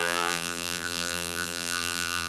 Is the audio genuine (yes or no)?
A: no